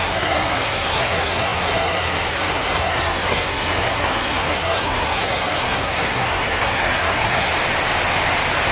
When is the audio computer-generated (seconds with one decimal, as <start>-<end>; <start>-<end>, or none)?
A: 0.0-7.5